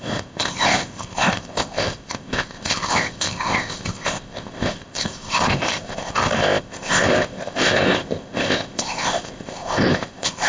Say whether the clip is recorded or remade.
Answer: remade